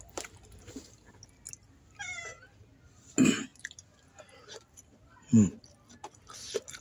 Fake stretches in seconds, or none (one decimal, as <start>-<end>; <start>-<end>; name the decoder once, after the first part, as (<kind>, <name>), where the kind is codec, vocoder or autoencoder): none

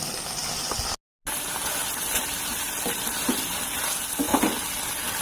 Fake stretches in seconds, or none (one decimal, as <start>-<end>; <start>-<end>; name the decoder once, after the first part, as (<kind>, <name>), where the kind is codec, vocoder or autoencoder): none

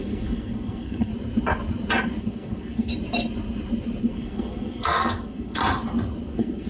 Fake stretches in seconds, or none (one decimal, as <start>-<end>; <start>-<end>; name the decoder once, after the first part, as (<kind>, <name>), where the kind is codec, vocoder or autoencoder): 0.0-1.1 (codec, SNAC); 2.2-2.9; 4.0-5.6; 6.3-6.7

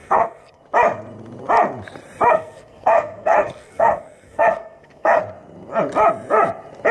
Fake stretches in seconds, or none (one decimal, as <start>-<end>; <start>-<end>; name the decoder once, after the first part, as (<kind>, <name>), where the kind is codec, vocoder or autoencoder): 0.0-0.6 (codec, SNAC); 2.3-5.2

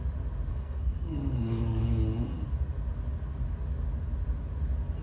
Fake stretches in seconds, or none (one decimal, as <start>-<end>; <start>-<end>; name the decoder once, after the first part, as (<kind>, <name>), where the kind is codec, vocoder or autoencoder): 0.5-1.8 (codec, SNAC)

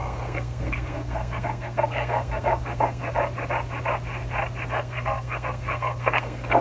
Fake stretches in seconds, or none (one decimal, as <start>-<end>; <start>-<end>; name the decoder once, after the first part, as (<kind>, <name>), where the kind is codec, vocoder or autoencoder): 0.0-3.0 (codec, SNAC); 4.7-6.6